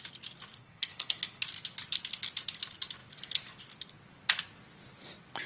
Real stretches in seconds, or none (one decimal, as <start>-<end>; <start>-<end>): 0.0-0.6; 1.4-5.5